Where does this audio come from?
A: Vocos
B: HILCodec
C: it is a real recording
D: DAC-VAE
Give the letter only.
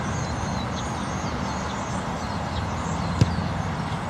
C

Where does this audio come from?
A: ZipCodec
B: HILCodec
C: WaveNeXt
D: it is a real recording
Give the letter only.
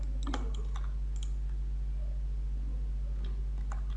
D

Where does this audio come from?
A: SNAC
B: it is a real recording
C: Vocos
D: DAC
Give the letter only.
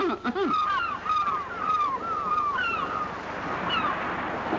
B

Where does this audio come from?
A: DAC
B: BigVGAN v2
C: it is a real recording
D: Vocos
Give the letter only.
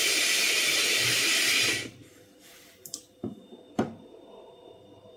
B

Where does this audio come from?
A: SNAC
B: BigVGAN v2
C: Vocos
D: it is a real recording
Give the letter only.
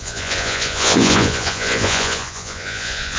C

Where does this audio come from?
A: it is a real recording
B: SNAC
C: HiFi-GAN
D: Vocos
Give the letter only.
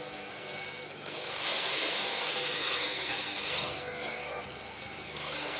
B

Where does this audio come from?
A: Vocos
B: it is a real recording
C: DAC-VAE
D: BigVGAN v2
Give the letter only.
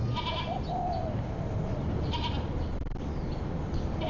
B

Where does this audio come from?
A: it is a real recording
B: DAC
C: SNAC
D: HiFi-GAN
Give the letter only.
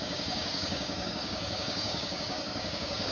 B